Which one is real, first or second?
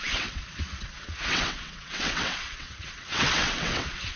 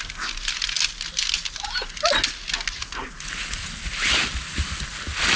second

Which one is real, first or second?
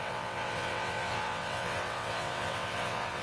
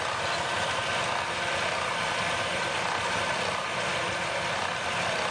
second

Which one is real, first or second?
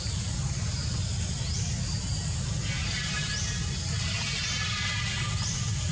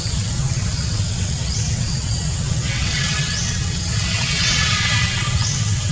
first